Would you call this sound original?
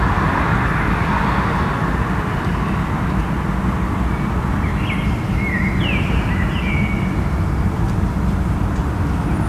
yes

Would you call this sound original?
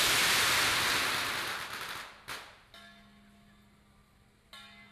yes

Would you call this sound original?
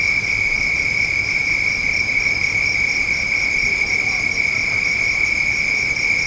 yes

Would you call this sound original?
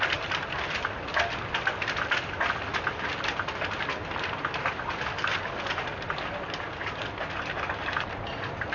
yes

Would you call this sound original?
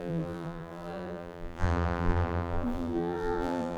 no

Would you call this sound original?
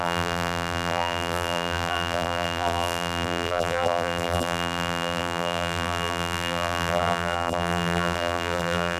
no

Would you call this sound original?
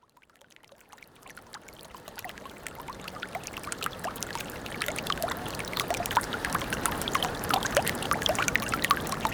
no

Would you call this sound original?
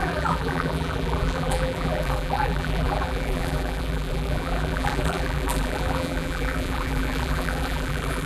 no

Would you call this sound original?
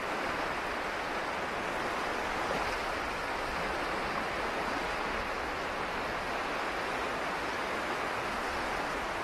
yes